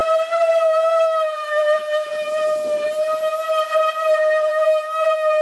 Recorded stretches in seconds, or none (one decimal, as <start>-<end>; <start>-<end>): 0.0-0.5; 2.1-4.5